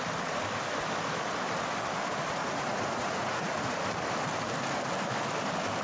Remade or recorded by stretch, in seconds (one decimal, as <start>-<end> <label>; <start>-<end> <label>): 0.0-2.4 recorded; 2.4-3.8 remade; 3.8-5.8 recorded